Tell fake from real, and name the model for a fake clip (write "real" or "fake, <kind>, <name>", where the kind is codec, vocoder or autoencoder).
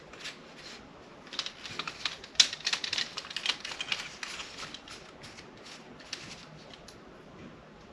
real